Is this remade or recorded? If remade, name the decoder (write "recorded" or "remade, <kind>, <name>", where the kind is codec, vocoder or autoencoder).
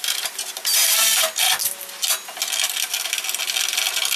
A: recorded